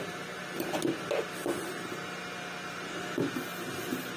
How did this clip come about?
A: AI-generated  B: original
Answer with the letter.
B